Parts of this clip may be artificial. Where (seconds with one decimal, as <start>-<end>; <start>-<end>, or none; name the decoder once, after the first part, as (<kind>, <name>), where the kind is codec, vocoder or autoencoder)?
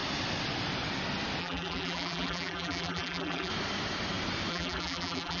1.4-3.5 (vocoder, BigVGAN v2); 4.5-5.4